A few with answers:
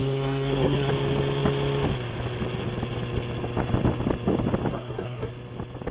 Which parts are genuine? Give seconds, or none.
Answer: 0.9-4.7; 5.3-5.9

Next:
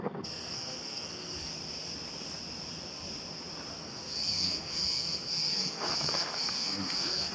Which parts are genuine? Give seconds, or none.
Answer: 1.5-3.8

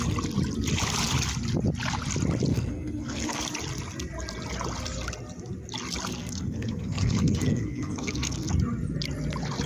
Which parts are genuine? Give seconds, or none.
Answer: 0.0-2.5; 3.4-6.1; 8.5-9.7